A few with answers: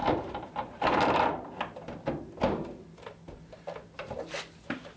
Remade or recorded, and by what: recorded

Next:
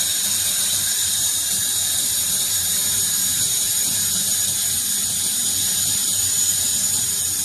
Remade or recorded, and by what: remade, vocoder, BigVGAN v2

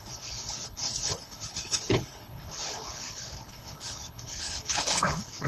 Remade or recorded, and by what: remade, codec, HILCodec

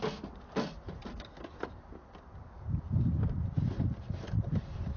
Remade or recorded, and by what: recorded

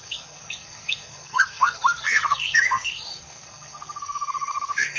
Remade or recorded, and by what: remade, codec, SNAC